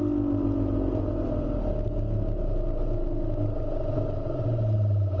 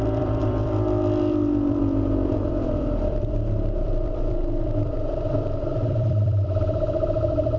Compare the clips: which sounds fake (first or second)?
second